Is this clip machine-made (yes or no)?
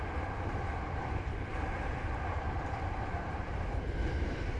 yes